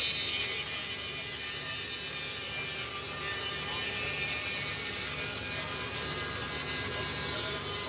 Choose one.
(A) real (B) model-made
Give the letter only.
A